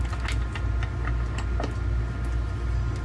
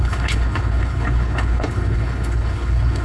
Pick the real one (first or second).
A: first